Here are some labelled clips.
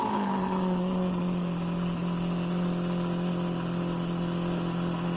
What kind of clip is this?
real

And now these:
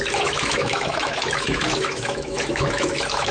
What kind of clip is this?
fake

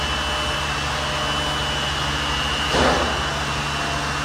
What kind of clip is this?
real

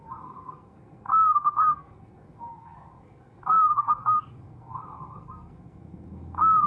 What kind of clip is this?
fake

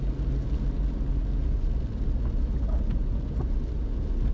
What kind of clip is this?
real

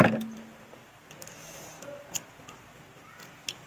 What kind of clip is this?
real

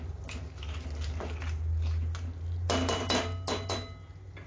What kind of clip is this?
real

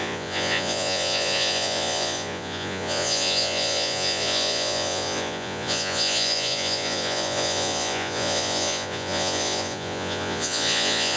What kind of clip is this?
fake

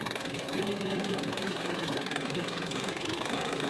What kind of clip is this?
fake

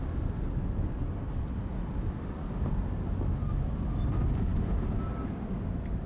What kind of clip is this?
real